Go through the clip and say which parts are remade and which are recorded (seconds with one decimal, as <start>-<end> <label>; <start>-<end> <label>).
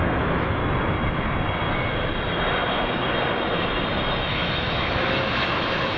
0.0-0.6 remade; 0.6-4.2 recorded; 4.2-6.0 remade